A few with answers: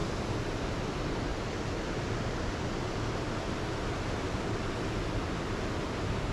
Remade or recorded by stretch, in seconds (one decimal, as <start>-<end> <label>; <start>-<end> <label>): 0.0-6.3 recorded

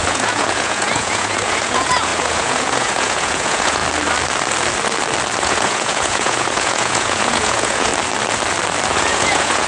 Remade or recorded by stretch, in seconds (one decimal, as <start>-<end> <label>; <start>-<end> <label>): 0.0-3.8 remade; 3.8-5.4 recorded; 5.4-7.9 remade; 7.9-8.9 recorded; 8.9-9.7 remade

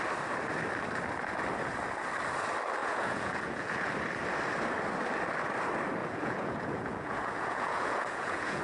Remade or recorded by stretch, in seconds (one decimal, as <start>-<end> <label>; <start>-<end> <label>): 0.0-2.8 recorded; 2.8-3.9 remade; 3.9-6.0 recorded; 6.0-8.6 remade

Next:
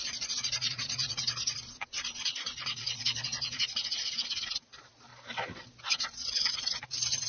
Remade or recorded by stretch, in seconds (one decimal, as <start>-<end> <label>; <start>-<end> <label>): 0.0-5.1 remade; 5.1-6.2 recorded; 6.2-7.3 remade